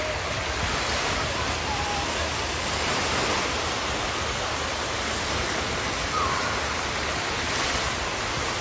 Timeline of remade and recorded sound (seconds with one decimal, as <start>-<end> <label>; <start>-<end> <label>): 0.0-8.6 recorded